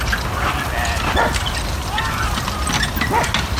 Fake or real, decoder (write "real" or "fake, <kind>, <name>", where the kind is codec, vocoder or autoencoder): real